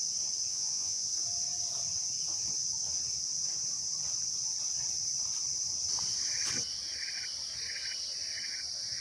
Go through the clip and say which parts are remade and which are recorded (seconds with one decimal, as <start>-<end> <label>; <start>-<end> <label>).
0.0-0.5 recorded; 0.5-1.1 remade; 1.1-9.0 recorded